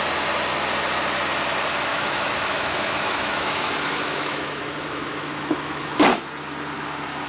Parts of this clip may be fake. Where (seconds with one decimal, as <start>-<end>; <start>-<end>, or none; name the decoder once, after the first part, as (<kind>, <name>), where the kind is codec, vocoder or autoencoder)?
1.9-6.0 (autoencoder, DAC-VAE)